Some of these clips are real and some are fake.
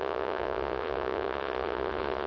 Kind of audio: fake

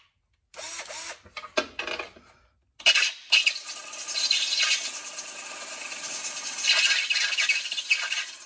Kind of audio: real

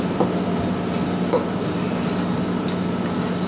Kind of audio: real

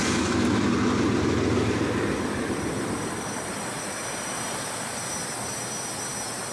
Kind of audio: real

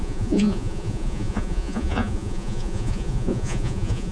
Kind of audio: fake